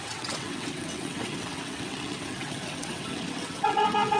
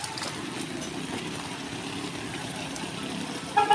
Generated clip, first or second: first